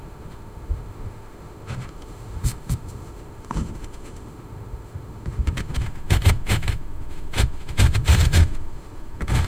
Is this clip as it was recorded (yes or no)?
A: no